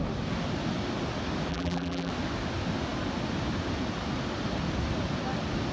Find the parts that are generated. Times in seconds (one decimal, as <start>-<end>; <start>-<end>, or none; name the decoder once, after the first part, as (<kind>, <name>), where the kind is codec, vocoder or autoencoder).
1.5-2.1 (vocoder, BigVGAN v2)